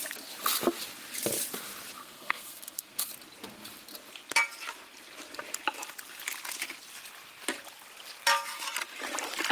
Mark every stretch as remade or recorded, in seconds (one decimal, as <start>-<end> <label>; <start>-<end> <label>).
0.0-2.0 recorded; 2.0-3.1 remade; 3.1-9.5 recorded